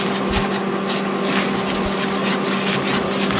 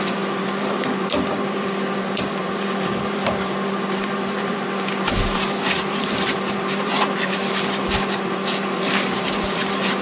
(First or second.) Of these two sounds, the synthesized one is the second